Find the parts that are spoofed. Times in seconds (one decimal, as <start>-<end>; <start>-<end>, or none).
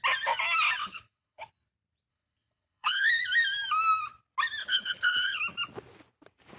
0.8-1.5; 2.1-3.1; 4.6-5.4